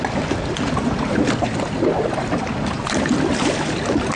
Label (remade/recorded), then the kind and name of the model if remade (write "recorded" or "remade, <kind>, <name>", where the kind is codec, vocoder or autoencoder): remade, vocoder, BigVGAN v2